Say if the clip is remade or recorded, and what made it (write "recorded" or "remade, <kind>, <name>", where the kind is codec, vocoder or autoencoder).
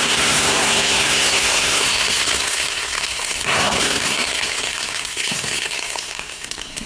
remade, codec, SNAC